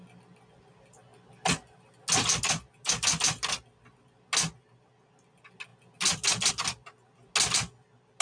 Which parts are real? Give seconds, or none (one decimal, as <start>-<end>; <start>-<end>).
0.0-8.2